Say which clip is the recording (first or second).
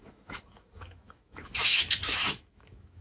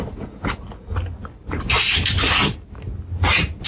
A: second